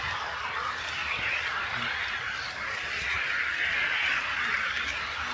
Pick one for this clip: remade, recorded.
recorded